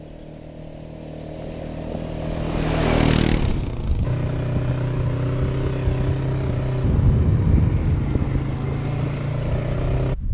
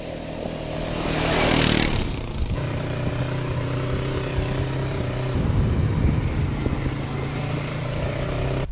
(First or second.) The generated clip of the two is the second